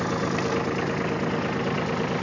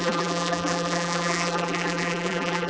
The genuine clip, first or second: first